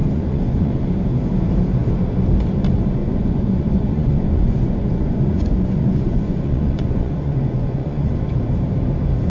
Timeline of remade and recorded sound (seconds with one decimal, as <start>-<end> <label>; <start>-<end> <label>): 0.0-0.9 remade; 0.9-3.0 recorded; 3.0-8.1 remade; 8.1-9.3 recorded